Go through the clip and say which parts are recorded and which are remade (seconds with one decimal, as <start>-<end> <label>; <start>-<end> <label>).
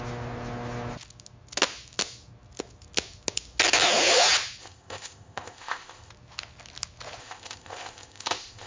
0.0-4.6 recorded; 4.6-6.1 remade; 6.1-7.2 recorded; 7.2-8.7 remade